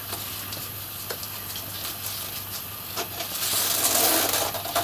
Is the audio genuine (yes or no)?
yes